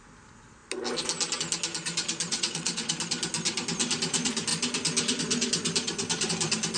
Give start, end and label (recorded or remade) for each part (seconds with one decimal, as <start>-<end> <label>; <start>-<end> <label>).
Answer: 0.0-2.3 recorded; 2.3-2.9 remade; 2.9-6.8 recorded